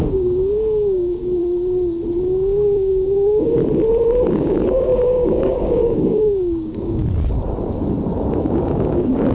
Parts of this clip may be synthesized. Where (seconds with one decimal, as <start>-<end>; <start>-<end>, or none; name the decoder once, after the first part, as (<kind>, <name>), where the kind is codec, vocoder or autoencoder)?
0.0-1.4 (codec, DAC); 2.2-3.6; 4.3-7.0; 8.4-9.3